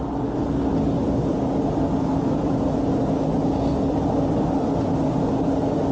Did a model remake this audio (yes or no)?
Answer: no